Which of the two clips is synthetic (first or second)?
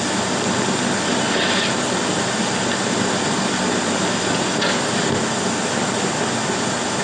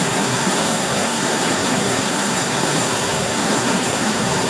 second